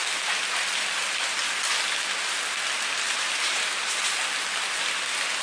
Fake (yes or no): no